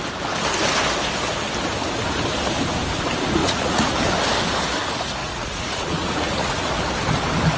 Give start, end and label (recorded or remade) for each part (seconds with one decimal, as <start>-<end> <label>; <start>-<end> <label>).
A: 0.0-3.4 recorded; 3.4-4.0 remade; 4.0-5.2 recorded; 5.2-6.7 remade; 6.7-7.6 recorded